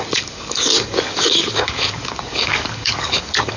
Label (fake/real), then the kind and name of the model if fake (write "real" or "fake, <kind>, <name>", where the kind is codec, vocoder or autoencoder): fake, codec, DAC